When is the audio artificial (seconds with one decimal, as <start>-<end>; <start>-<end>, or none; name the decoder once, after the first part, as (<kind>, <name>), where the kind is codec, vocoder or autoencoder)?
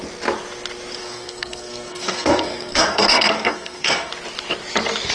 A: 1.0-4.1 (codec, SNAC)